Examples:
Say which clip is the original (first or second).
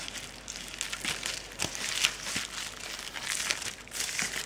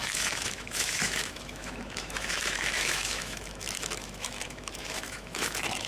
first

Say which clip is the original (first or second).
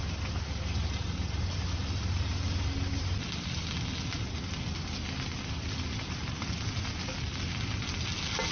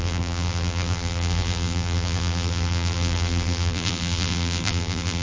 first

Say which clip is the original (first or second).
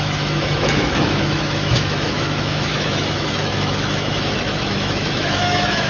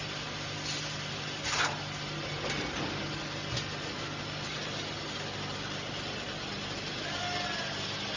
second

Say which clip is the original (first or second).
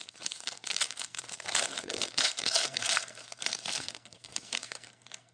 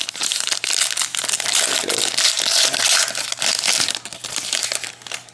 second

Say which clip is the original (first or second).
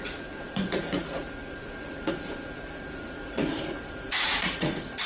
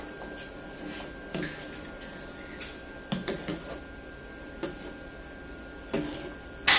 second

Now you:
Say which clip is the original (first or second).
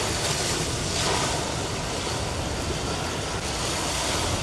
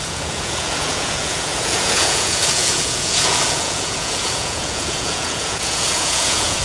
first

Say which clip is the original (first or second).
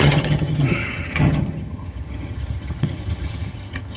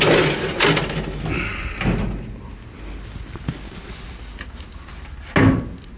second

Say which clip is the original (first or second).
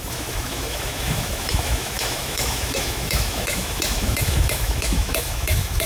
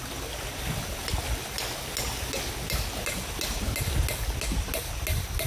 second